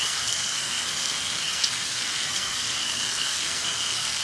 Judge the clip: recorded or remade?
remade